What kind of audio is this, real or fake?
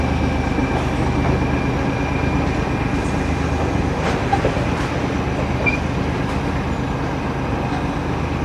real